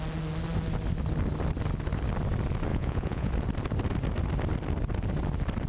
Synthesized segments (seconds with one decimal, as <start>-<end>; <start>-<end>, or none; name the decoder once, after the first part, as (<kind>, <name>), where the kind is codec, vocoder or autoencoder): 2.7-3.3 (vocoder, Vocos)